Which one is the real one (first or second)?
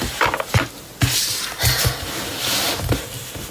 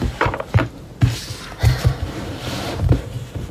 first